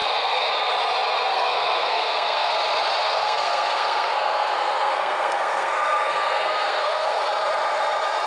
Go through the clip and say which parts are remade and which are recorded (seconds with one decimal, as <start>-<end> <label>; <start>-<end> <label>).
0.0-0.5 remade; 0.5-1.3 recorded; 1.3-2.5 remade; 2.5-3.0 recorded; 3.0-7.2 remade; 7.2-8.3 recorded